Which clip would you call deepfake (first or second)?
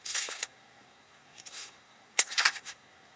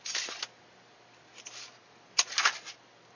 first